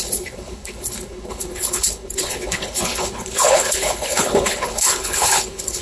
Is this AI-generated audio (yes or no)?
yes